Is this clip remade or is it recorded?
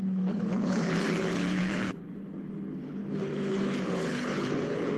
remade